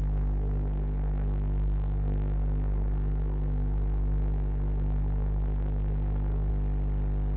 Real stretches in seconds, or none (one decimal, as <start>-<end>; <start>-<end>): 6.5-7.4